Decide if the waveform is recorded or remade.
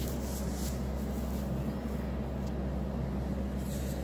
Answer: recorded